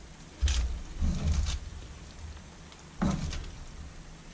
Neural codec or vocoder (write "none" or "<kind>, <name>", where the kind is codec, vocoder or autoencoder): none